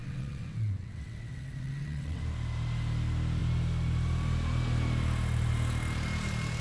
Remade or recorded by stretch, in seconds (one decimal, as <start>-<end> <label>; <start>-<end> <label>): 0.0-2.2 remade; 2.2-6.6 recorded